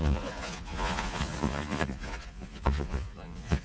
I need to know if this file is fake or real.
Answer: fake